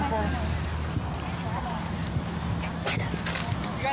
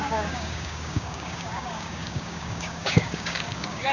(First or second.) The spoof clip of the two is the second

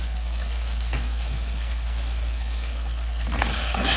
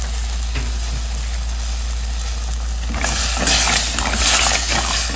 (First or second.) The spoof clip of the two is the first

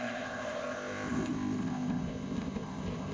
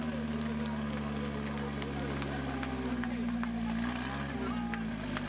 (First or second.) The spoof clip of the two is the first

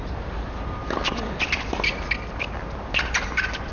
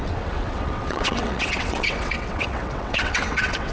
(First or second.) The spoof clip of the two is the second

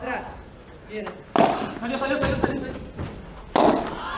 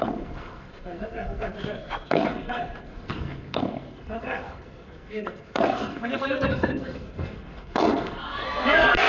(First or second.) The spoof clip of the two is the second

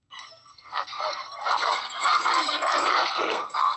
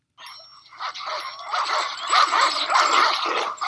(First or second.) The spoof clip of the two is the first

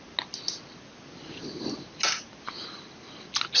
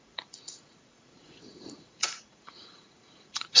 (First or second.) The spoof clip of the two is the second